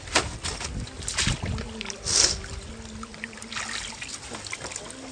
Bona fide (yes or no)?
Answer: yes